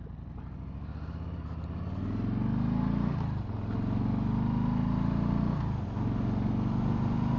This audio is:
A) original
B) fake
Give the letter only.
A